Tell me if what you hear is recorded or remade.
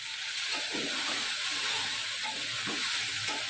remade